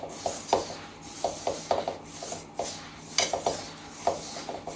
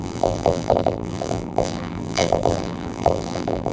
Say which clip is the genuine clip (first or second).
first